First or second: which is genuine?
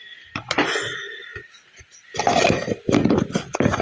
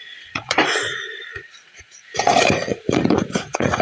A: first